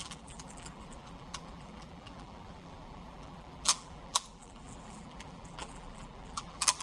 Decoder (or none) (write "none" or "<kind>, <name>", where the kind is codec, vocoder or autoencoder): vocoder, BigVGAN v2